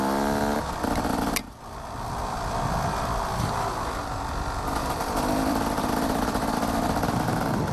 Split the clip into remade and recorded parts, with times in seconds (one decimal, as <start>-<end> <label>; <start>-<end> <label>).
0.0-4.8 recorded; 4.8-7.7 remade